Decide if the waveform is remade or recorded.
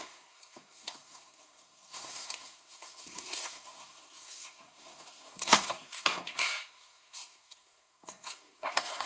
remade